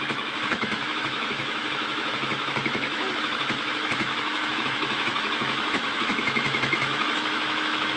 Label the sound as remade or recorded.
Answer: remade